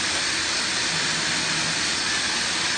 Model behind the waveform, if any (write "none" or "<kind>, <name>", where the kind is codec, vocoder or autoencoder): none